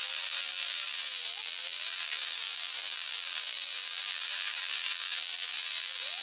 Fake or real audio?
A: fake